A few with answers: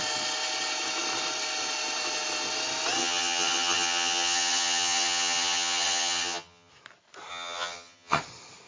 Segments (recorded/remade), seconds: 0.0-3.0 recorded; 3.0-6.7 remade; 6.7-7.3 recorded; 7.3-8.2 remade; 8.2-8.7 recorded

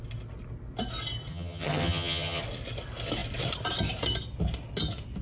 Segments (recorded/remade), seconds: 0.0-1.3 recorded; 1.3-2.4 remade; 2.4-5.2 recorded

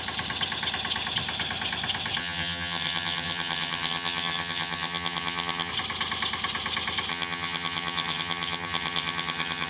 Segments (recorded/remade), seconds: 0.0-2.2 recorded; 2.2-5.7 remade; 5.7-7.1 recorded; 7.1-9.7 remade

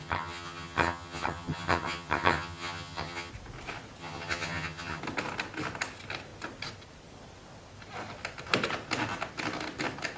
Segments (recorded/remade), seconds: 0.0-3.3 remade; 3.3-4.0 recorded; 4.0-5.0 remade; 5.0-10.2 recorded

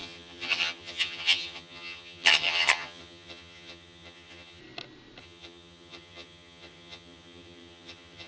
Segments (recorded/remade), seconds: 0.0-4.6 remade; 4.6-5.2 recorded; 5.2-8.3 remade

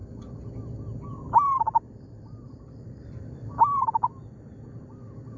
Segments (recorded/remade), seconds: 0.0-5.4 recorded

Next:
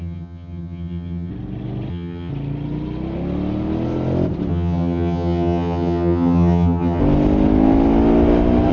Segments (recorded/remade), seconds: 0.0-1.3 remade; 1.3-1.9 recorded; 1.9-2.3 remade; 2.3-4.5 recorded; 4.5-7.0 remade; 7.0-8.7 recorded